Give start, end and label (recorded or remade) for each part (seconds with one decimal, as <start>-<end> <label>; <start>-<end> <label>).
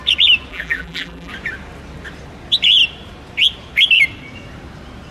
0.0-0.5 recorded; 0.5-1.3 remade; 1.3-5.1 recorded